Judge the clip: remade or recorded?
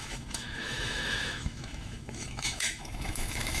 remade